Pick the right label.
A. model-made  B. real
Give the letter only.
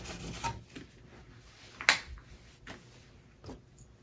B